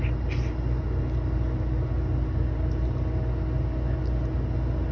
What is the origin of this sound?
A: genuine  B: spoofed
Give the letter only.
A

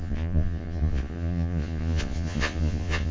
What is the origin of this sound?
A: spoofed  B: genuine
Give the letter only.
A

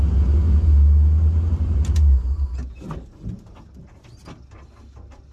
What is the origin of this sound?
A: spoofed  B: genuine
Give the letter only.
B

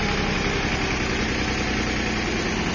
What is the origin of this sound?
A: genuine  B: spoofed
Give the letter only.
A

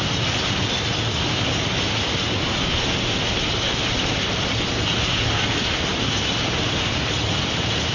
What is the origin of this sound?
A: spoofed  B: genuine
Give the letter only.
B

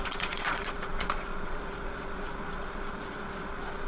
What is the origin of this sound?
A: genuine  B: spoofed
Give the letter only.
B